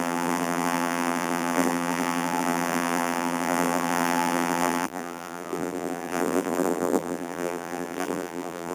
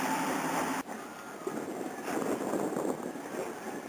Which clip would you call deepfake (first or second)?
first